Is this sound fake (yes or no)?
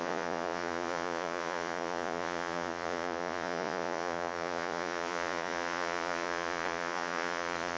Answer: yes